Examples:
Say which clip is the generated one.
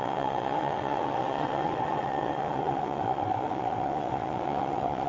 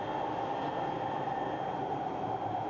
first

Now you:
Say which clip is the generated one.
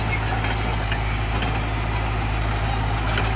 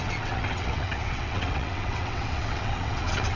second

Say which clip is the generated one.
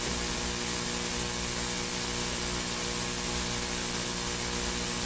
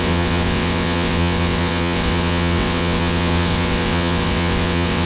second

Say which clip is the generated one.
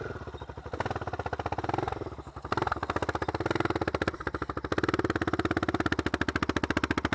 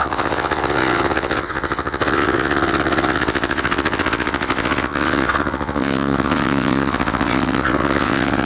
second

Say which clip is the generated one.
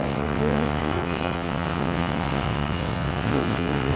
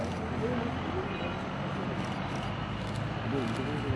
first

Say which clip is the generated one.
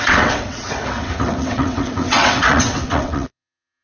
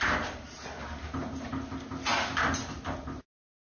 first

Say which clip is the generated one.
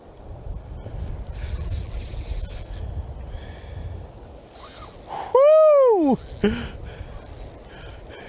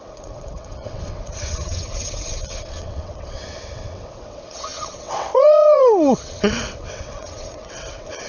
second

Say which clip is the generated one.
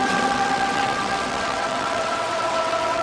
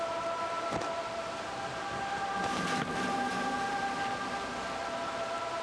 first